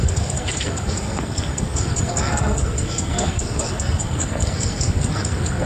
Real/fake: fake